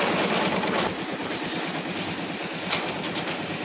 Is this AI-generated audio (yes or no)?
no